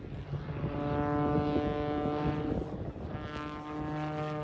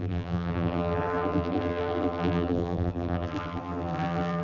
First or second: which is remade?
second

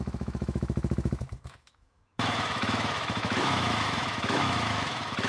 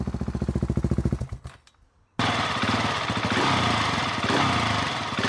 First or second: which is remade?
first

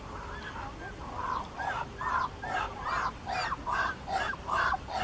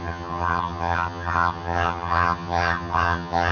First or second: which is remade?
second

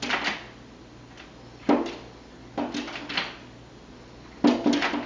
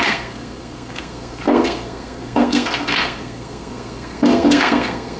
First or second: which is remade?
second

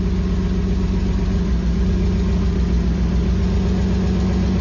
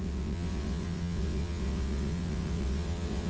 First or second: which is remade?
second